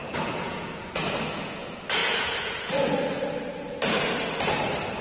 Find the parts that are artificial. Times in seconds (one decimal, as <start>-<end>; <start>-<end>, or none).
0.0-1.1; 2.0-2.7